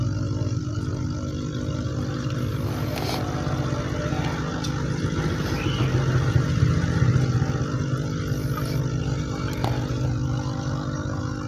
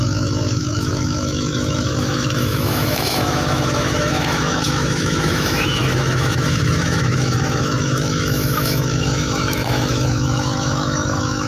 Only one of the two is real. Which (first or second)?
first